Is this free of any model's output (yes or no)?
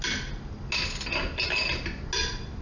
yes